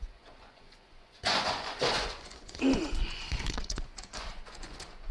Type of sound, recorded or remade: remade